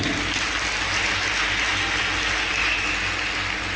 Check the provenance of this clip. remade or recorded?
recorded